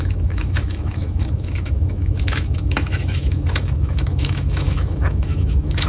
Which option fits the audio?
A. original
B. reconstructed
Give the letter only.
B